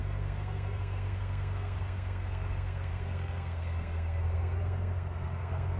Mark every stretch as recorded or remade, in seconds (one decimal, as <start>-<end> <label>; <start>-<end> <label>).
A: 0.0-5.8 remade